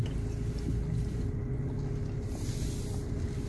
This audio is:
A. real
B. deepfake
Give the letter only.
A